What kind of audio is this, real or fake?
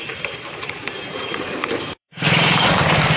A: fake